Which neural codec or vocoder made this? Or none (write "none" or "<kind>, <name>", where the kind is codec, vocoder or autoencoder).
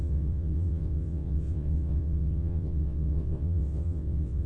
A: vocoder, WaveNeXt